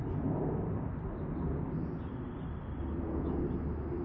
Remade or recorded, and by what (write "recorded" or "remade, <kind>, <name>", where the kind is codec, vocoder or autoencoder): recorded